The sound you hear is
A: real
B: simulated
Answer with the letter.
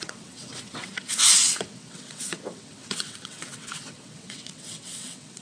B